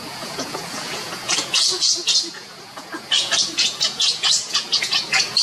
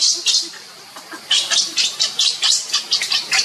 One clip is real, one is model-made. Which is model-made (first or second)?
first